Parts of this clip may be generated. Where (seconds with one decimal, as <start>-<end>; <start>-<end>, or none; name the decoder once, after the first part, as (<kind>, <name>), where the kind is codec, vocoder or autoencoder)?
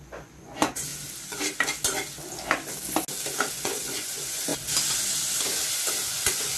0.0-0.9 (vocoder, Vocos); 3.5-4.5; 6.0-6.6